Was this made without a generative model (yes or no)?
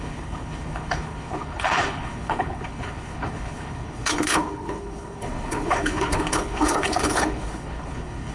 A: no